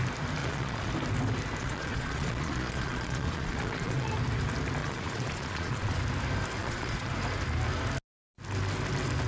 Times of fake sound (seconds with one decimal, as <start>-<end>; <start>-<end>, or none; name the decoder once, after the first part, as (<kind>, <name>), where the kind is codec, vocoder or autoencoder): 0.4-0.9 (vocoder, Vocos); 1.6-4.1; 4.8-6.0; 6.6-7.1